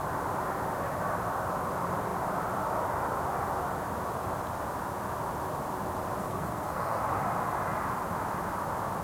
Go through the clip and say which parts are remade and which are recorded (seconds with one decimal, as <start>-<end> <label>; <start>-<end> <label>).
0.0-6.2 recorded; 6.2-7.0 remade; 7.0-9.0 recorded